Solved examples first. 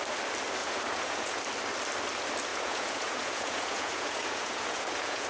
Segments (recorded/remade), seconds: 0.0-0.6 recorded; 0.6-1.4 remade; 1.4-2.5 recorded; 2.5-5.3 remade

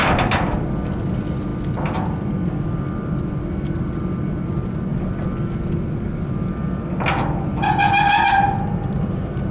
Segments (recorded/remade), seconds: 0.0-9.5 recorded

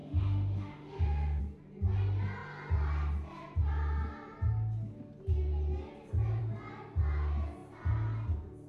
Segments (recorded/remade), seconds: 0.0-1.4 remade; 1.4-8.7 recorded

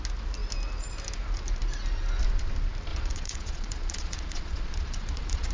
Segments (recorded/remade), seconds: 0.0-2.9 recorded; 2.9-5.5 remade